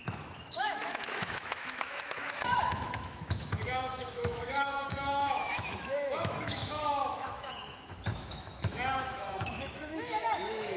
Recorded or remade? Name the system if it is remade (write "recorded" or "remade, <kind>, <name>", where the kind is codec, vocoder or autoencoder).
remade, autoencoder, DAC-VAE